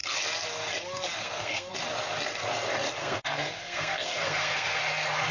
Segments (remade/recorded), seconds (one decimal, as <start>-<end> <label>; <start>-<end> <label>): 0.0-1.2 recorded; 1.2-1.7 remade; 1.7-3.0 recorded; 3.0-4.8 remade; 4.8-5.3 recorded